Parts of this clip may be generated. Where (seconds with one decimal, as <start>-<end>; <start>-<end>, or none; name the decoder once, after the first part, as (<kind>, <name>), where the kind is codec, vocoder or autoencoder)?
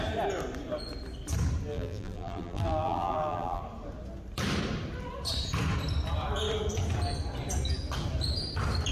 1.7-3.6 (vocoder, BigVGAN v2)